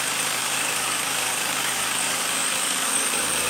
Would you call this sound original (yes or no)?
no